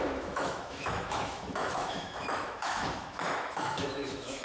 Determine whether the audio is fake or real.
fake